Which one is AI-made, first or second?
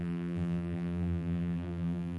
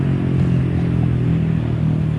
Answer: first